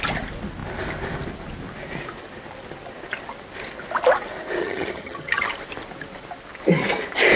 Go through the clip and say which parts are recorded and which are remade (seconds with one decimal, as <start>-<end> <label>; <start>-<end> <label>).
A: 0.0-4.6 recorded; 4.6-5.5 remade; 5.5-7.4 recorded